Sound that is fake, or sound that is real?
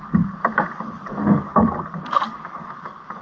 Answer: fake